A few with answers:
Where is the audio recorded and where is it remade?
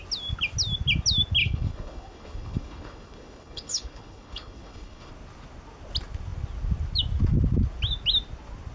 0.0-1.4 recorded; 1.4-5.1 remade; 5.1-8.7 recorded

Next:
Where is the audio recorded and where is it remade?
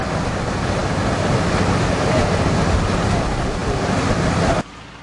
0.0-5.0 recorded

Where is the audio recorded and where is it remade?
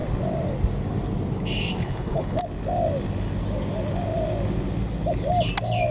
0.0-1.8 recorded; 1.8-2.4 remade; 2.4-5.9 recorded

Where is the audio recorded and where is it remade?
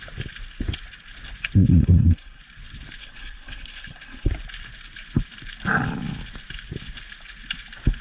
0.0-1.7 recorded; 1.7-2.4 remade; 2.4-3.0 recorded; 3.0-4.3 remade; 4.3-8.0 recorded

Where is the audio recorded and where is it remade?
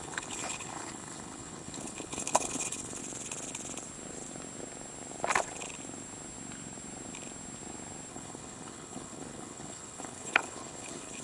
0.0-3.0 remade; 3.0-8.1 recorded; 8.1-11.2 remade